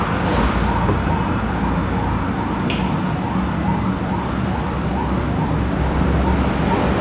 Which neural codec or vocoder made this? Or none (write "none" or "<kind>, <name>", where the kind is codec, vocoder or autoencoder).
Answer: none